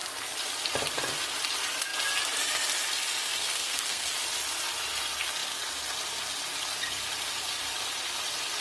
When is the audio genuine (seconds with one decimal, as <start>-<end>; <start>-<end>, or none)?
0.0-3.4; 4.1-8.6